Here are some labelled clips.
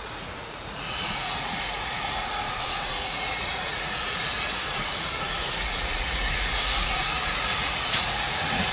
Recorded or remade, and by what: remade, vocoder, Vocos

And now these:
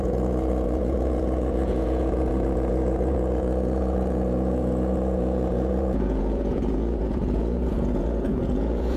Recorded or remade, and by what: remade, vocoder, Vocos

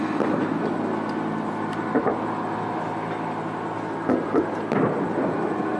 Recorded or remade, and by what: recorded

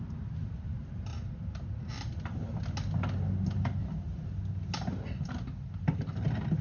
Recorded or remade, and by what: recorded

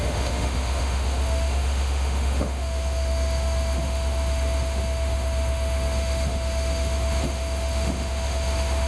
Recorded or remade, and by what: remade, autoencoder, DAC-VAE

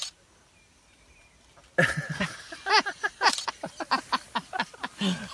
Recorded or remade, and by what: recorded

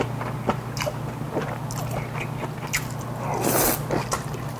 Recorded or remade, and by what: recorded